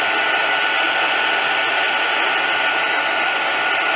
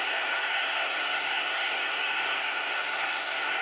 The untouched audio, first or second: first